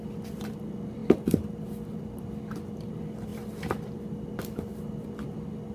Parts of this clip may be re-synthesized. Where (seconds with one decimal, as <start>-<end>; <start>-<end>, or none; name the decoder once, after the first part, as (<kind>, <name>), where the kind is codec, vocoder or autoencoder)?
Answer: none